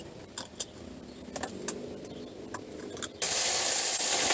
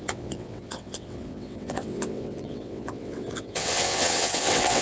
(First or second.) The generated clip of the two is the second